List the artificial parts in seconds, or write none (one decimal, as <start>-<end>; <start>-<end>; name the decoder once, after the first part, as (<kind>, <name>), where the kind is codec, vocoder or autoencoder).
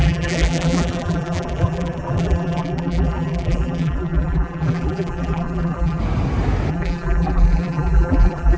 0.0-6.0 (vocoder, BigVGAN v2); 6.7-8.6